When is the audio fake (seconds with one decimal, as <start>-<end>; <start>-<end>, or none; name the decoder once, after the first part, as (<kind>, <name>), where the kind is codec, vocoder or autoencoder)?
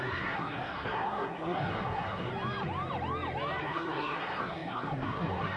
0.0-2.3 (codec, SNAC); 3.6-5.6